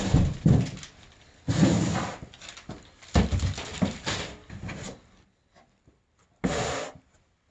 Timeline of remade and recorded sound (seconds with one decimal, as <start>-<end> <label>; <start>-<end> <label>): 0.0-3.7 recorded; 3.7-6.0 remade; 6.0-7.5 recorded